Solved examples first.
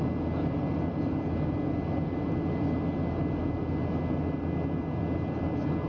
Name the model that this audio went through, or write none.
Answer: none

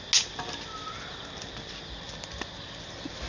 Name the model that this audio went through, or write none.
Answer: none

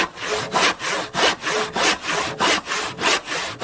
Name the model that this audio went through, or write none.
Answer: none